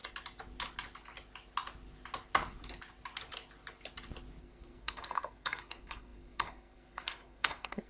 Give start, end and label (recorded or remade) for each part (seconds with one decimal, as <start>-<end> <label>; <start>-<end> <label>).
0.0-4.4 recorded; 4.4-7.9 remade